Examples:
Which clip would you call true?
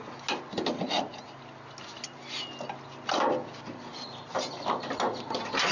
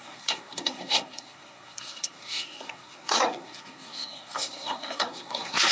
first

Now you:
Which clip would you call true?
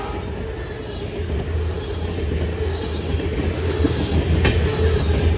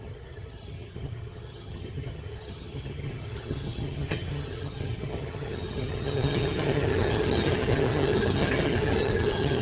first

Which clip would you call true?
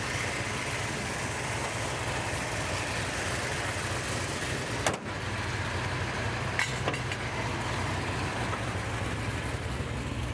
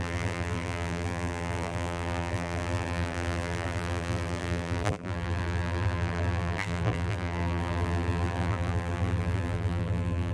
first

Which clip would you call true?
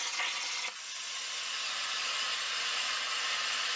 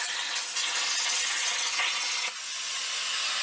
second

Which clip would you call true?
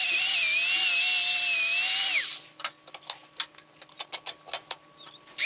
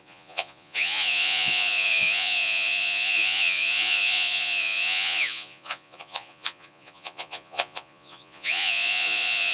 first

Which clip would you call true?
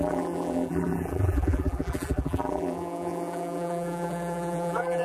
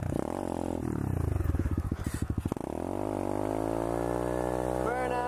second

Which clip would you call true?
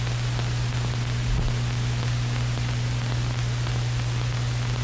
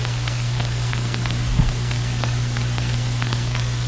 first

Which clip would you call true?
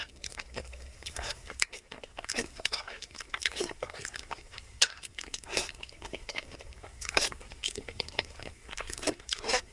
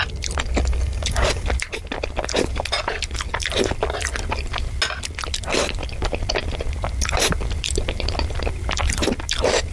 second